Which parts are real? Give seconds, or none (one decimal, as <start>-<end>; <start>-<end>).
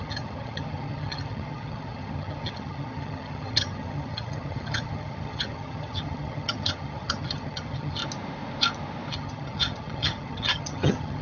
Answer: 8.0-9.1